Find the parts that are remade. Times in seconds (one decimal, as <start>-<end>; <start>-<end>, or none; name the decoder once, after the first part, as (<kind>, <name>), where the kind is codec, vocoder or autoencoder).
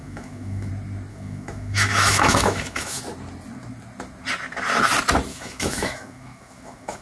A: 0.0-0.7 (autoencoder, DAC-VAE); 1.1-3.0; 5.3-7.0